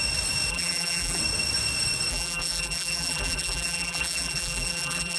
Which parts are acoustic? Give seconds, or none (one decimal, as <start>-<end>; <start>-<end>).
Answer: 0.0-0.5; 1.2-2.1